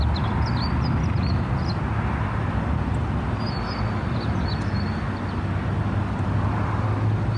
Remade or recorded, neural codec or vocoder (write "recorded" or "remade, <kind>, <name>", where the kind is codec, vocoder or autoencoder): recorded